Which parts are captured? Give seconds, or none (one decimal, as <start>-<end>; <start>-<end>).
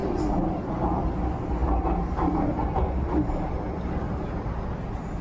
0.0-5.2